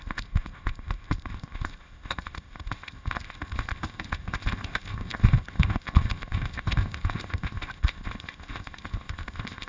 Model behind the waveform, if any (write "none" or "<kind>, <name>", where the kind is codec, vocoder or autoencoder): codec, ZipCodec